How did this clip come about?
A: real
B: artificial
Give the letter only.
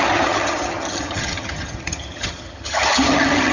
B